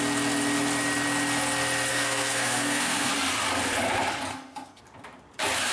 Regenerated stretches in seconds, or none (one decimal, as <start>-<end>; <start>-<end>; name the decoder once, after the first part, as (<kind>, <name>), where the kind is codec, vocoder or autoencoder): 1.9-3.1 (codec, SNAC); 4.3-4.8